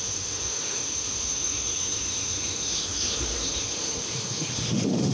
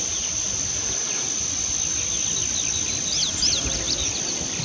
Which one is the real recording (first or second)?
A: second